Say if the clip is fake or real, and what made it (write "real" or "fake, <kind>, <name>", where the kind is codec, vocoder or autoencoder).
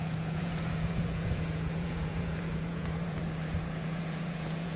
fake, vocoder, Vocos